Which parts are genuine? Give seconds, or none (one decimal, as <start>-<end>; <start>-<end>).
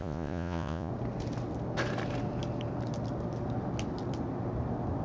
0.9-5.0